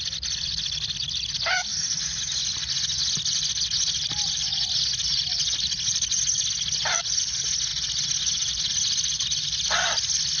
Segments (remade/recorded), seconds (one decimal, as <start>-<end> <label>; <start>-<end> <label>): 0.0-10.4 recorded